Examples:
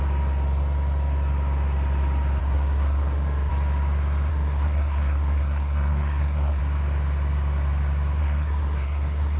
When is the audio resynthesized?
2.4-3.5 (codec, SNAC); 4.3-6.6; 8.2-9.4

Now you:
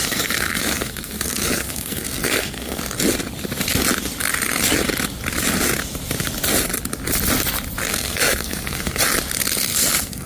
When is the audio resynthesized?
0.0-2.8 (codec, SNAC); 7.9-9.0; 9.7-10.3

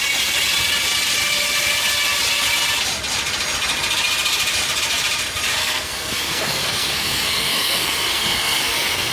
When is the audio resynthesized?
5.6-9.1 (codec, SNAC)

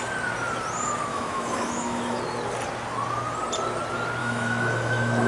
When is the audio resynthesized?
1.1-2.2 (autoencoder, DAC-VAE); 4.2-5.3

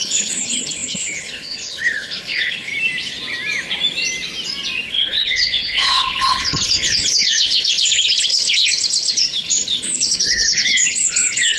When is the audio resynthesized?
0.0-2.7 (codec, HILCodec); 4.9-11.6

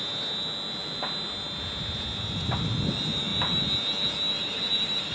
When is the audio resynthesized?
none

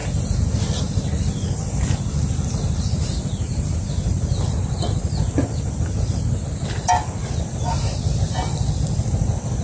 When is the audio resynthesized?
none

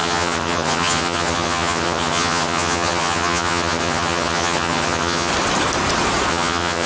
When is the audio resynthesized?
0.0-5.3 (vocoder, HiFi-GAN); 6.3-6.9